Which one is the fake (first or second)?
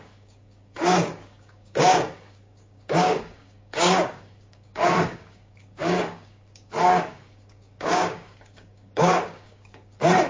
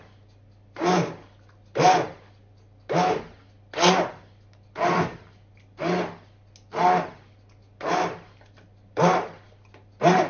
first